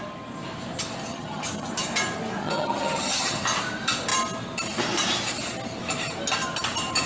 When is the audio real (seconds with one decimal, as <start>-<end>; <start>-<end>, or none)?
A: 0.0-1.1; 1.7-2.4; 3.4-7.1